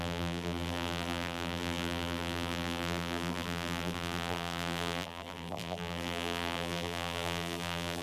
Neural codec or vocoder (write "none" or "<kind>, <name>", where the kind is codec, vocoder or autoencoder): vocoder, BigVGAN v2